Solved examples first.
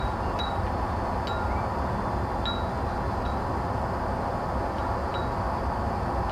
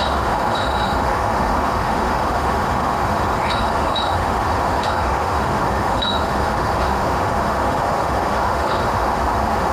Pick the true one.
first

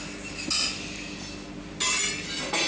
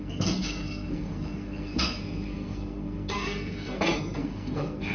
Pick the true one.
first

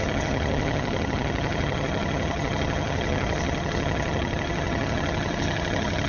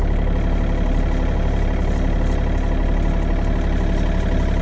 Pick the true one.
second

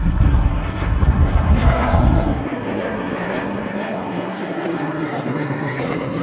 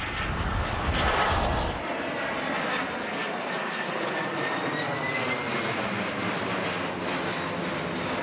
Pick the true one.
second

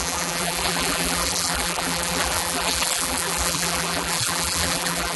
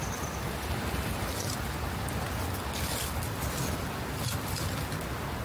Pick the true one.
second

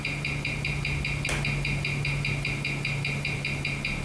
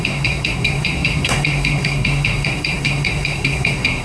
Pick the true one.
first